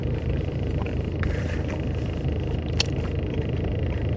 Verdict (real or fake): fake